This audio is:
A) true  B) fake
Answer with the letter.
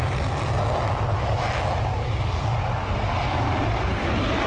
A